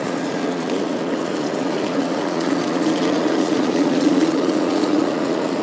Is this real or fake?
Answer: fake